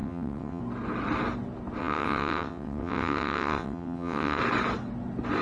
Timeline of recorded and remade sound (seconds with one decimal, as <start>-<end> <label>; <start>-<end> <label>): 0.0-0.6 remade; 0.6-1.8 recorded; 1.8-4.4 remade; 4.4-5.4 recorded